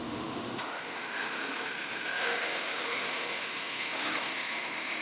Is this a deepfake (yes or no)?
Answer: yes